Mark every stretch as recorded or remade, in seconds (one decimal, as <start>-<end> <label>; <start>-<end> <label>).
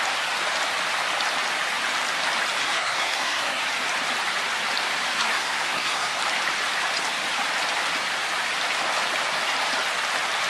0.0-2.6 recorded; 2.6-3.6 remade; 3.6-5.1 recorded; 5.1-6.2 remade; 6.2-10.5 recorded